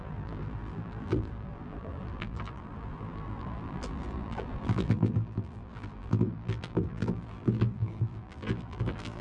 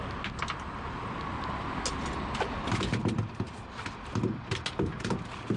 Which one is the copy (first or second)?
first